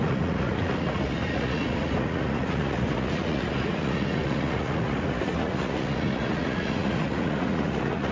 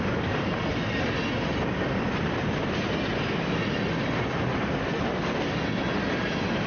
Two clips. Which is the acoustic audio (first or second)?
second